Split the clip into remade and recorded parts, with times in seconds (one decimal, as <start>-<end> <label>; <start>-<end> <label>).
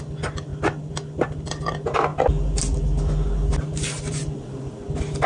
0.0-5.3 recorded